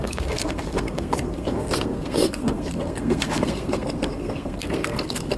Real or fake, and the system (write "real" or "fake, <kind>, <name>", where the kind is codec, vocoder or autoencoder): fake, codec, SNAC